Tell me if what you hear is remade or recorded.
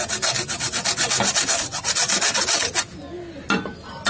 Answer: recorded